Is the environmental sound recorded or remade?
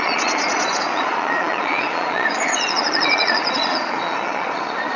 remade